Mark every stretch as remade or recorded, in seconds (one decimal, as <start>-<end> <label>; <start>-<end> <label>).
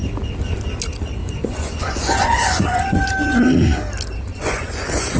0.0-1.2 recorded; 1.2-3.1 remade; 3.1-4.3 recorded; 4.3-5.2 remade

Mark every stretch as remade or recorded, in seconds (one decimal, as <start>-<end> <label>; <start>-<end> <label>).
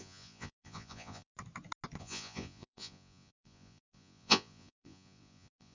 0.0-1.3 remade; 1.3-2.0 recorded; 2.0-5.7 remade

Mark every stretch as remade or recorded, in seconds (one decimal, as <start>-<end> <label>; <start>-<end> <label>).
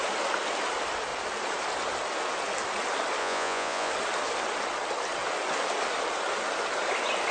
0.0-3.2 recorded; 3.2-3.9 remade; 3.9-7.3 recorded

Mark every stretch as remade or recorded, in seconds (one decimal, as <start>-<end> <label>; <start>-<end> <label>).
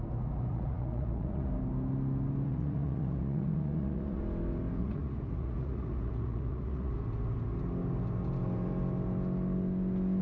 0.0-0.5 recorded; 0.5-1.5 remade; 1.5-2.5 recorded; 2.5-4.2 remade; 4.2-4.8 recorded; 4.8-6.9 remade; 6.9-10.2 recorded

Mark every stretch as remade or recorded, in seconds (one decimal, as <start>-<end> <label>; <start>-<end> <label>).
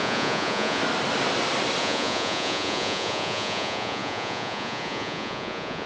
0.0-0.8 remade; 0.8-1.8 recorded; 1.8-5.9 remade